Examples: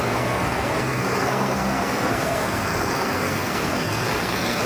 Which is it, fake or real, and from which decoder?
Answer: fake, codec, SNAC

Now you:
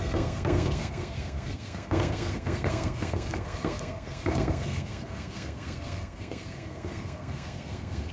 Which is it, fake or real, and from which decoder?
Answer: fake, codec, SNAC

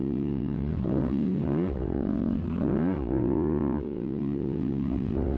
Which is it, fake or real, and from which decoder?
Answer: fake, vocoder, WaveNeXt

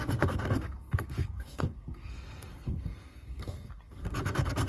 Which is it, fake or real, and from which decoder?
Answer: fake, codec, SNAC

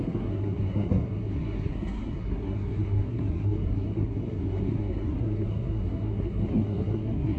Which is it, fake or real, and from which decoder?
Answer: fake, codec, SNAC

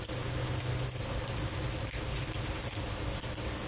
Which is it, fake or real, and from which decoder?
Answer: real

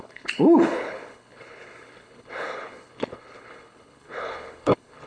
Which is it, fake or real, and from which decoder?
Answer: fake, codec, HILCodec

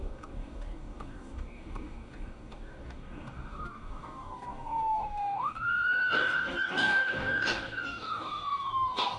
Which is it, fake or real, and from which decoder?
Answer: fake, codec, DAC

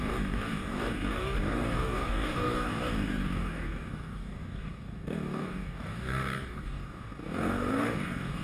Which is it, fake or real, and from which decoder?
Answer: fake, codec, DAC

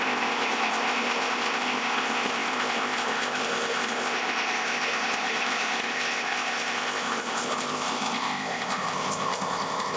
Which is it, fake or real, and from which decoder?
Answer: fake, codec, ZipCodec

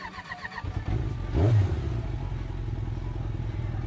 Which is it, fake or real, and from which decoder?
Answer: fake, vocoder, BigVGAN v2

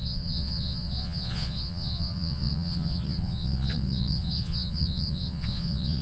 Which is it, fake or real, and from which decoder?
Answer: fake, vocoder, Vocos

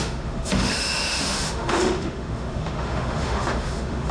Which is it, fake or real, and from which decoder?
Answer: fake, autoencoder, DAC-VAE